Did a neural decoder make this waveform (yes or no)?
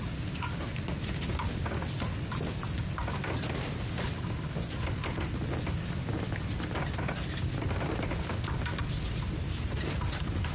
no